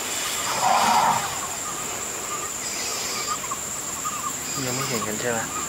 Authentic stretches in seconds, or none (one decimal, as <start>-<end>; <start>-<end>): 0.0-0.5; 1.6-5.7